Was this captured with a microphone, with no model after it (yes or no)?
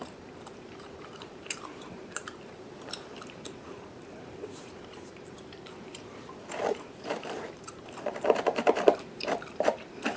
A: no